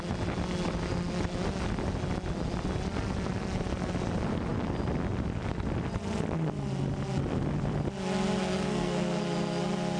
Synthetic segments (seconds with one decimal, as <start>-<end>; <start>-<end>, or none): 8.4-9.2